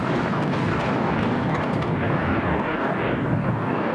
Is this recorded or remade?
remade